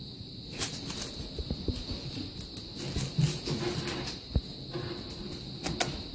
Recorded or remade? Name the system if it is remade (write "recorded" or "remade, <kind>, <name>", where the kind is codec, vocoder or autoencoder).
recorded